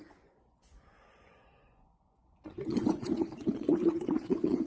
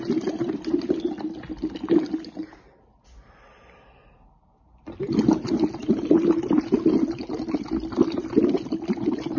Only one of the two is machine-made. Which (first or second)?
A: first